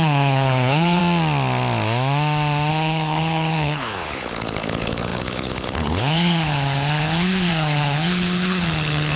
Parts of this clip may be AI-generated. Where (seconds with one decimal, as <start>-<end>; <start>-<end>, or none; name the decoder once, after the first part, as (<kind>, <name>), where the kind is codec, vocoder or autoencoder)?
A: 0.0-1.0 (codec, HILCodec); 2.7-9.2